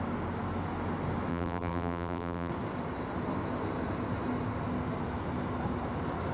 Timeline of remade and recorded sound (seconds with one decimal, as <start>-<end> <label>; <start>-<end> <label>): 0.0-1.3 recorded; 1.3-2.5 remade; 2.5-6.3 recorded